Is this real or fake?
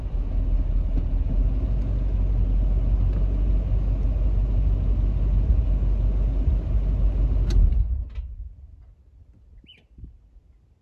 real